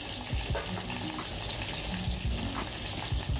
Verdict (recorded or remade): recorded